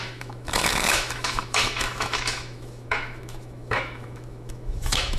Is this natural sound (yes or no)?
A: no